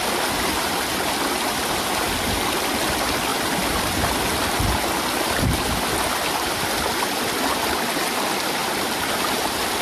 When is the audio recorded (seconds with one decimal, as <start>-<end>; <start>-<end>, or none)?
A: 0.0-3.3; 4.2-8.6